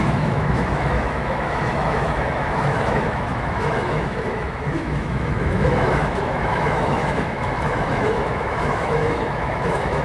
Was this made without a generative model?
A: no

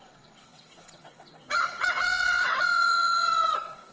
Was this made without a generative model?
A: no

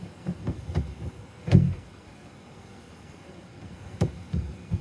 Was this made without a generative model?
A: no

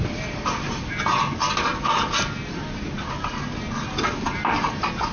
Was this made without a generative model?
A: yes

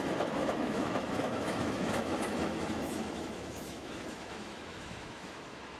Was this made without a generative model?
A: no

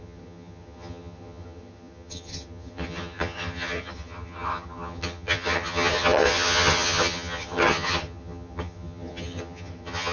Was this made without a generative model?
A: no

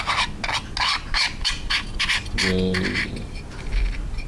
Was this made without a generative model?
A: yes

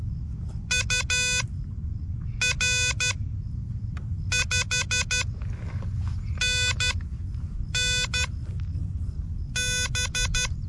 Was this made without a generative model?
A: yes